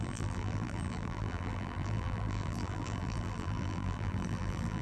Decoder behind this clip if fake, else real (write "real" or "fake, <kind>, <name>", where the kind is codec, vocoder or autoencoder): fake, vocoder, BigVGAN v2